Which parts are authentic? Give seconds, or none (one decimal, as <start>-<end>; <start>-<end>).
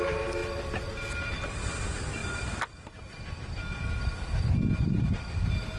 0.0-5.8